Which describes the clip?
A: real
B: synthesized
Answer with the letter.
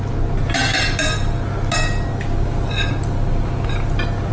A